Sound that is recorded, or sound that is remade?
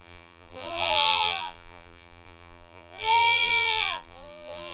remade